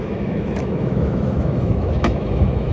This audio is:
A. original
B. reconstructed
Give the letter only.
B